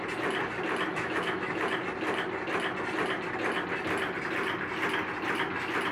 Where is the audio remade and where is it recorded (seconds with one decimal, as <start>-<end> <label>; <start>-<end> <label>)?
0.0-0.9 recorded; 0.9-1.5 remade; 1.5-5.9 recorded